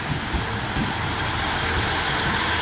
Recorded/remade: recorded